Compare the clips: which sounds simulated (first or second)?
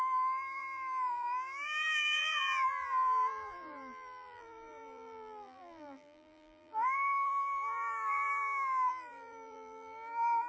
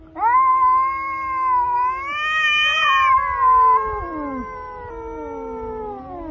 first